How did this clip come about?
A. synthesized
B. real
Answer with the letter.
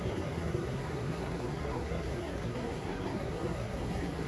A